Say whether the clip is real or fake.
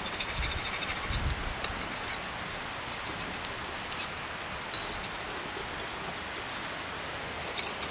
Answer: real